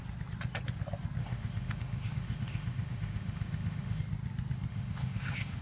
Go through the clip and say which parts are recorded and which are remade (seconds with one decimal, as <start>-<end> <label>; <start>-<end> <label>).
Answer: 0.0-1.2 recorded; 1.2-4.0 remade; 4.0-4.7 recorded; 4.7-5.6 remade

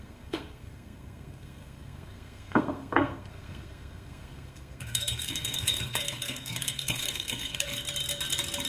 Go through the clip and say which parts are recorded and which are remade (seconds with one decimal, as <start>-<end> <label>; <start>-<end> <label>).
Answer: 0.0-7.7 remade; 7.7-8.7 recorded

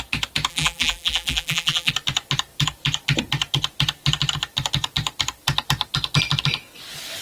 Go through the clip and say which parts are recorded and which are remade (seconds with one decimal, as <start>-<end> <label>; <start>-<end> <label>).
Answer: 0.0-0.5 recorded; 0.5-1.9 remade; 1.9-7.2 recorded

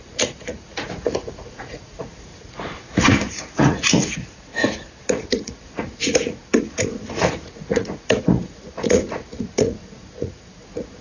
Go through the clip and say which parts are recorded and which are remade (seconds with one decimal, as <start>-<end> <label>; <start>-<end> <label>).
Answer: 0.0-4.5 remade; 4.5-5.0 recorded; 5.0-11.0 remade

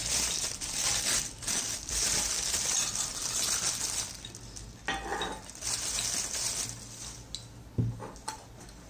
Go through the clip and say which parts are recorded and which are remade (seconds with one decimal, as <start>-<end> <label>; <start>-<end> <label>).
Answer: 0.0-3.8 remade; 3.8-5.1 recorded; 5.1-6.8 remade; 6.8-8.9 recorded